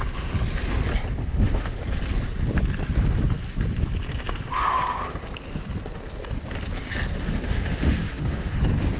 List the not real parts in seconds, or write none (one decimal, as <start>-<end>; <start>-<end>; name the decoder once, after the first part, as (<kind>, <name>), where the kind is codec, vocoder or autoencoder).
1.2-1.8 (autoencoder, DAC-VAE); 7.2-8.6